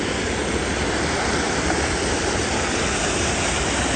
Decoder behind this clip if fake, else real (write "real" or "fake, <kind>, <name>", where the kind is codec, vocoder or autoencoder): real